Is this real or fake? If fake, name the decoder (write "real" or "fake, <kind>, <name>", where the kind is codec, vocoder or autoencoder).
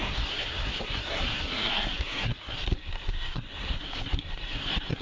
fake, codec, SNAC